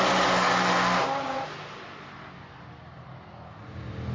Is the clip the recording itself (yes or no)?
yes